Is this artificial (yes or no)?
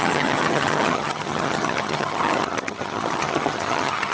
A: yes